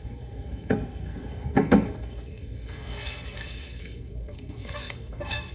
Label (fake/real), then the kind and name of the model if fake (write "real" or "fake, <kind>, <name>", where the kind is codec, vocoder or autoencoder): fake, codec, SNAC